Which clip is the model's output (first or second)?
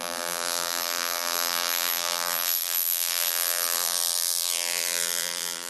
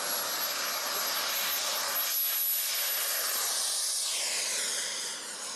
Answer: first